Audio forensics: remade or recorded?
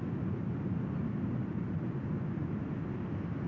recorded